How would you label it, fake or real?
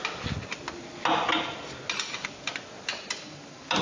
real